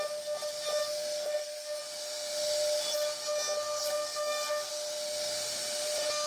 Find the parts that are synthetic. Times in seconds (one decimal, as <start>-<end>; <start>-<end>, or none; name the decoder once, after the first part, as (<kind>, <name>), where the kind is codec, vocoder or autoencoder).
0.8-1.8 (codec, SNAC); 3.8-4.7